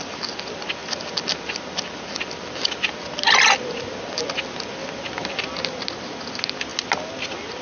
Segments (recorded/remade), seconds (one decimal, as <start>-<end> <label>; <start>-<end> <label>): 0.0-7.6 recorded